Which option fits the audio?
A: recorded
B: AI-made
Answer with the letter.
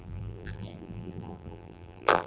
B